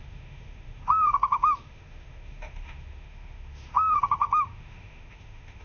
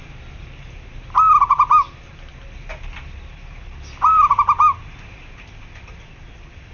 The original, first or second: second